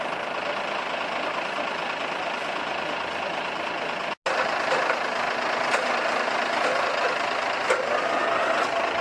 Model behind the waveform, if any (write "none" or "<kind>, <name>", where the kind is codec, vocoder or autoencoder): none